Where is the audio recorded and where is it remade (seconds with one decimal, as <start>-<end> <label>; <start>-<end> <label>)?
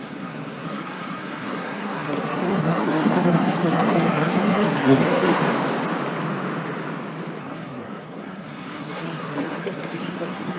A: 0.0-5.4 remade; 5.4-7.4 recorded; 7.4-10.6 remade